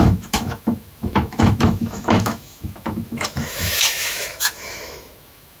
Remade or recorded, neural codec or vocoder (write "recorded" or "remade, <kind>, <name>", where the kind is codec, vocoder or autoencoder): remade, autoencoder, DAC-VAE